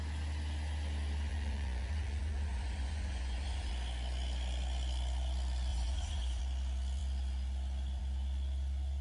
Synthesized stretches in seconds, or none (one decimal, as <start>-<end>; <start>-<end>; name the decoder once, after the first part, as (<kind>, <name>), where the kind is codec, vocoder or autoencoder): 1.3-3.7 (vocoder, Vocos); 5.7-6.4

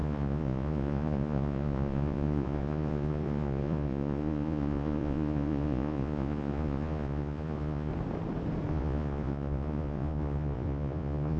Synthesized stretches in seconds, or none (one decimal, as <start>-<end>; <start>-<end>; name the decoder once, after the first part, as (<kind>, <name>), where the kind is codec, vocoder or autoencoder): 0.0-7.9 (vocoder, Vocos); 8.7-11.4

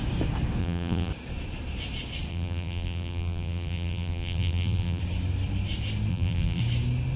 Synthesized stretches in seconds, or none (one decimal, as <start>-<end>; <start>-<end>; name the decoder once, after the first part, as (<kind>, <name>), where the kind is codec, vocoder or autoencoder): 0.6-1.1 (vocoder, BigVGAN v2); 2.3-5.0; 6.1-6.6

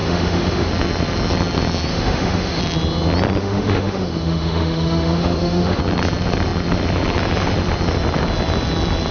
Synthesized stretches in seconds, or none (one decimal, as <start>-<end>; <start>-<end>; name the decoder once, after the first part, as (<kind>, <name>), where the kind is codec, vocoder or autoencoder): 0.0-0.7 (autoencoder, DAC-VAE); 1.9-2.6; 3.4-5.8

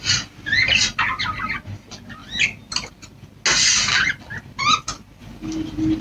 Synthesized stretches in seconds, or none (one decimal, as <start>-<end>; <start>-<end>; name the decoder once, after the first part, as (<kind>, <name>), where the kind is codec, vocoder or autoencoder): none

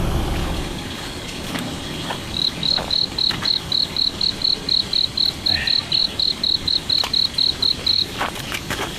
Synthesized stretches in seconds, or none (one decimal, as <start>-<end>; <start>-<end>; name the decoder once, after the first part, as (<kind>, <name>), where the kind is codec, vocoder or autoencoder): 0.4-4.3 (codec, DAC); 6.0-6.9; 7.9-9.0

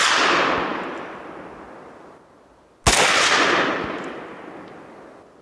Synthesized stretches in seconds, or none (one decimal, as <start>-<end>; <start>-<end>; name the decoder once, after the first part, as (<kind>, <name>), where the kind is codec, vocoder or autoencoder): none